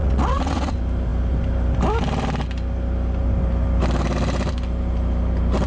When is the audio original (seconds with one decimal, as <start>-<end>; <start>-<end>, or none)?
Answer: 0.7-5.7